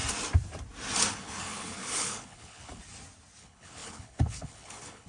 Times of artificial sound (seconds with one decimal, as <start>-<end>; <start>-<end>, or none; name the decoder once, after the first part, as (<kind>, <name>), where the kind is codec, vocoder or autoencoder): 1.1-2.8 (codec, HILCodec); 3.4-5.1